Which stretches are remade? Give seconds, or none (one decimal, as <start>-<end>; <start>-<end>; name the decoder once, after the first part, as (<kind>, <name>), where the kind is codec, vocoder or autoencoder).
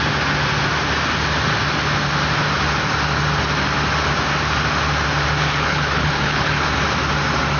5.4-6.7 (codec, HILCodec)